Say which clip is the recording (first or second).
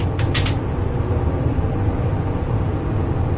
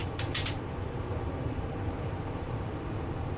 first